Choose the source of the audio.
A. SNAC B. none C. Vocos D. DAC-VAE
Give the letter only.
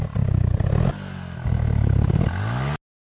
B